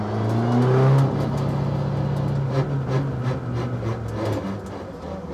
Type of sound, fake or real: real